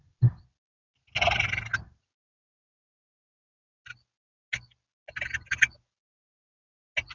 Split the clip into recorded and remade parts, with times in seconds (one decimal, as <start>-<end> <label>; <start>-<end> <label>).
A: 0.0-7.1 recorded